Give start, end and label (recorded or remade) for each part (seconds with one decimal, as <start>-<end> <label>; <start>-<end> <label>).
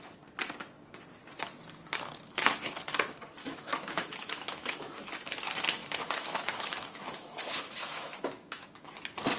0.0-3.4 recorded; 3.4-5.0 remade; 5.0-5.8 recorded; 5.8-8.9 remade; 8.9-9.4 recorded